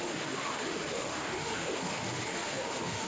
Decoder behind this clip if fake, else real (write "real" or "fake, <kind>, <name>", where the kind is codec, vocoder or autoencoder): fake, autoencoder, DAC-VAE